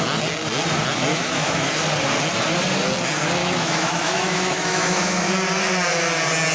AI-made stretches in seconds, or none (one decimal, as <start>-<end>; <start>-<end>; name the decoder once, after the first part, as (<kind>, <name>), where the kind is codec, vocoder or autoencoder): 1.1-1.7 (autoencoder, DAC-VAE); 3.4-5.3